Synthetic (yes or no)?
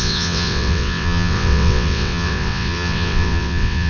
yes